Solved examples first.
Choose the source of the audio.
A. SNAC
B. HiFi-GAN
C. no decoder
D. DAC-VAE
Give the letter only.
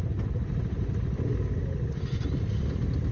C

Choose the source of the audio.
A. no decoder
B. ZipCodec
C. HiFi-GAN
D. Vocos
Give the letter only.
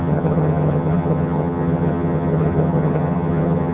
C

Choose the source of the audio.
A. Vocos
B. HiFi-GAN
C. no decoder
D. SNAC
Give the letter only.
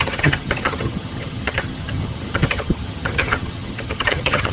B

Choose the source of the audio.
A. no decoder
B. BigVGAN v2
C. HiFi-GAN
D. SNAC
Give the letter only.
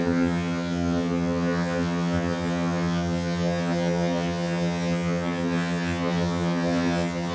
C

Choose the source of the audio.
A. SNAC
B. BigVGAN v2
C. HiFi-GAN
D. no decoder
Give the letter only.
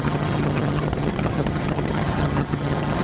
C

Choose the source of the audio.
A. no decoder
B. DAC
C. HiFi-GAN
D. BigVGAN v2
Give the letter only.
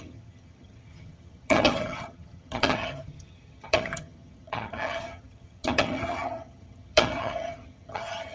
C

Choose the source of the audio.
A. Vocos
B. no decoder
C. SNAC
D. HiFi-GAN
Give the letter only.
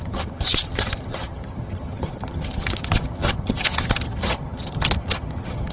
D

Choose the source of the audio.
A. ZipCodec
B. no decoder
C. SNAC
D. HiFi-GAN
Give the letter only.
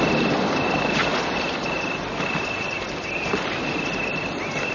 B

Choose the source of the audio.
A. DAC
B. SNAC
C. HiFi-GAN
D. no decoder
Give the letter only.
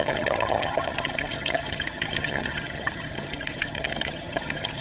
C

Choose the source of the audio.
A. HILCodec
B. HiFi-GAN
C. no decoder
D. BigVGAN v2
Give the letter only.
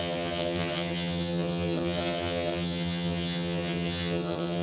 B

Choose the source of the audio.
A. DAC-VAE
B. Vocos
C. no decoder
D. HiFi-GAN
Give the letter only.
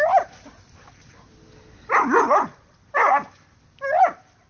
C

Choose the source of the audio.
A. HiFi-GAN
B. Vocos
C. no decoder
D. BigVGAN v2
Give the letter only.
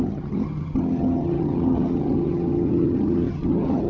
A